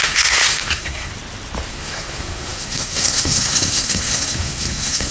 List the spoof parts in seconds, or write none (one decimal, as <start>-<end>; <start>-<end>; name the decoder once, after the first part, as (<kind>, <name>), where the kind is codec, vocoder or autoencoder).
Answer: 0.0-1.1 (codec, SNAC); 1.7-5.1